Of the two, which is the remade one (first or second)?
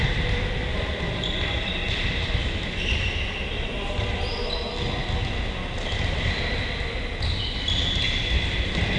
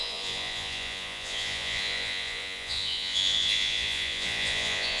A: second